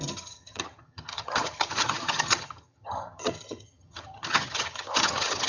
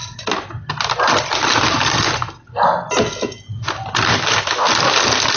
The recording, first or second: second